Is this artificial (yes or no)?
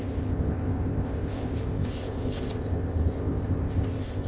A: yes